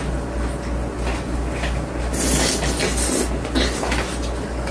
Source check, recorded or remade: recorded